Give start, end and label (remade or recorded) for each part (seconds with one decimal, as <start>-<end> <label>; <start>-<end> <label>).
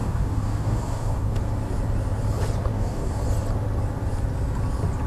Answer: 0.0-1.4 remade; 1.4-2.7 recorded; 2.7-3.2 remade; 3.2-5.1 recorded